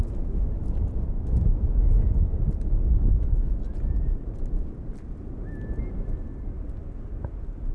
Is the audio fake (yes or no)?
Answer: no